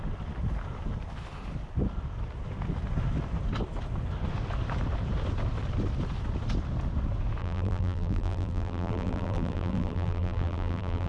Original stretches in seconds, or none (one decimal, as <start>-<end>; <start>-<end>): 0.0-7.4

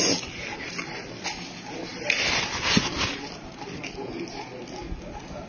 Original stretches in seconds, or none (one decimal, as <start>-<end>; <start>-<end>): 0.0-5.5

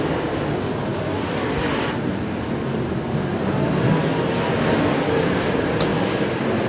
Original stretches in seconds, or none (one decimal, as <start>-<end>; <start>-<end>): 0.0-0.9; 3.8-5.9

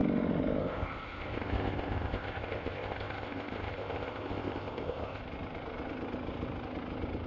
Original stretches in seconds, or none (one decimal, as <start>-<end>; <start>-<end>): 0.0-0.6; 5.2-7.3

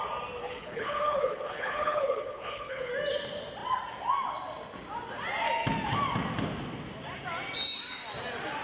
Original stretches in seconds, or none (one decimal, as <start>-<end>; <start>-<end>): 0.0-0.4; 2.9-8.6